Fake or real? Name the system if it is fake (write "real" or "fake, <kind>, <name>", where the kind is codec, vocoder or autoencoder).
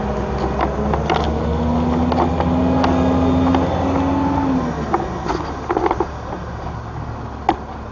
real